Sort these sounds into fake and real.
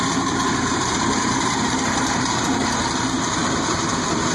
fake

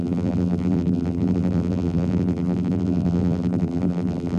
fake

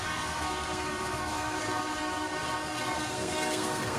fake